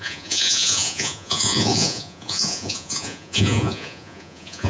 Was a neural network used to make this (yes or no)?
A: yes